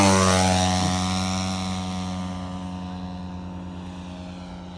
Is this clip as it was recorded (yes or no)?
yes